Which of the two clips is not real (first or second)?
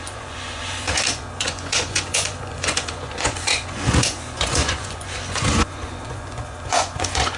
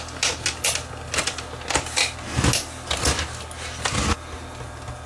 first